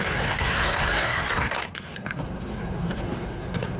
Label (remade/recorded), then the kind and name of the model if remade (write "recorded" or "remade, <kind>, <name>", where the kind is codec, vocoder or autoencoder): remade, codec, SNAC